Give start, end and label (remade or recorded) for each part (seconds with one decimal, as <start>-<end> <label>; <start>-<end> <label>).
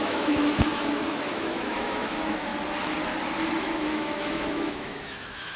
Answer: 0.0-2.5 remade; 2.5-3.6 recorded; 3.6-5.6 remade